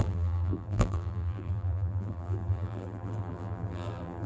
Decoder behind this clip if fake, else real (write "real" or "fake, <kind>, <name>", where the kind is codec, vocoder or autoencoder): fake, vocoder, BigVGAN v2